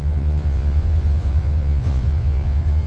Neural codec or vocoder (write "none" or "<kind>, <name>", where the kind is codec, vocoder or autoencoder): vocoder, Vocos